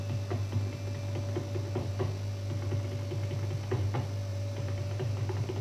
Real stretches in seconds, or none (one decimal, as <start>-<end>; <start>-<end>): 0.0-4.3; 5.1-5.6